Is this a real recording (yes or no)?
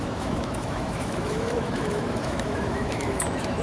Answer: no